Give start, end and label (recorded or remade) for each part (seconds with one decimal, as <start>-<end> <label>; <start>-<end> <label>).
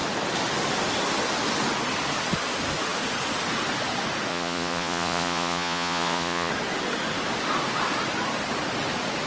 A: 0.0-4.3 recorded; 4.3-6.5 remade; 6.5-9.3 recorded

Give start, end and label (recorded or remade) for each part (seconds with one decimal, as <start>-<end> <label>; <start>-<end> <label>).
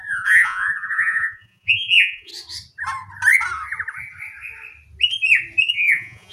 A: 0.0-2.3 remade; 2.3-5.7 recorded; 5.7-6.3 remade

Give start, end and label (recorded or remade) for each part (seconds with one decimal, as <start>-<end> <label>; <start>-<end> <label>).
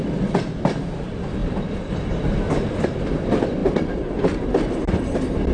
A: 0.0-5.5 recorded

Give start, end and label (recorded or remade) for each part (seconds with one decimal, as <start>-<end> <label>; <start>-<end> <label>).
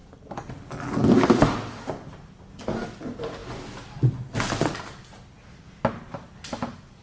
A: 0.0-7.0 recorded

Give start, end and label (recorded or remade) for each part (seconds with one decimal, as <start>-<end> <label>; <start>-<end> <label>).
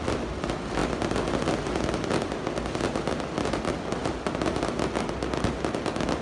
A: 0.0-6.2 recorded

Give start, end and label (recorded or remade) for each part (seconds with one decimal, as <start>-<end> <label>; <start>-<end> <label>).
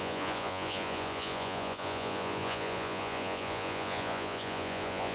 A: 0.0-5.1 remade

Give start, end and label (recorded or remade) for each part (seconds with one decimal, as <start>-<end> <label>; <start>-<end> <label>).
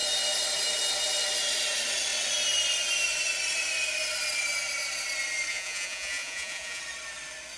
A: 0.0-5.5 recorded; 5.5-6.8 remade; 6.8-7.6 recorded